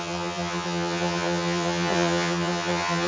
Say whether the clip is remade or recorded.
remade